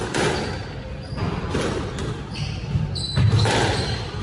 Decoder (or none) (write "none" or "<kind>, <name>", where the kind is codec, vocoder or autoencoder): none